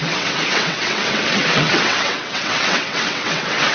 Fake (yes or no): yes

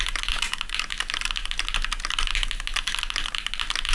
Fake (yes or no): no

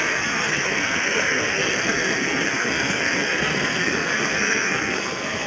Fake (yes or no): yes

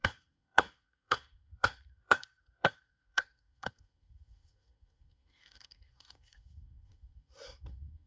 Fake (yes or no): yes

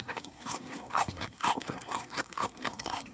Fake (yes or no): yes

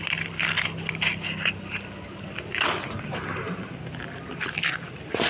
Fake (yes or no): yes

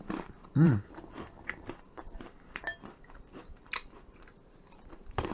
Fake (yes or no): yes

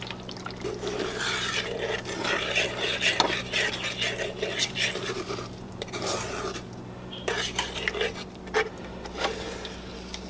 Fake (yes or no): yes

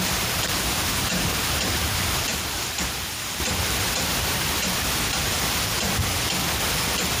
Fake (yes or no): yes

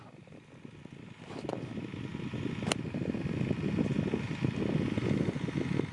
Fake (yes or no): no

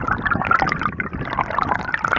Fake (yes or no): no